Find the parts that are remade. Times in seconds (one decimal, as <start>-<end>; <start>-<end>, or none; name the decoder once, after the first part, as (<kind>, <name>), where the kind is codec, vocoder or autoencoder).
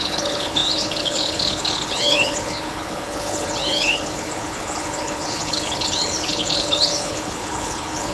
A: 0.0-8.1 (codec, HILCodec)